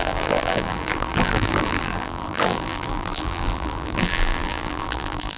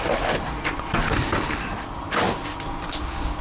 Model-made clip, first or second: first